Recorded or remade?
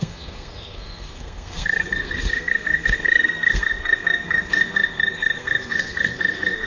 remade